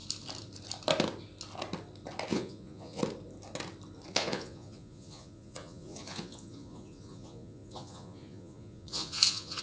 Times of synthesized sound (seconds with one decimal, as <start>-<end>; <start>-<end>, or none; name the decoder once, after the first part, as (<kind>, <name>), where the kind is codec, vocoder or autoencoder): 2.3-3.0 (vocoder, Vocos); 4.1-9.6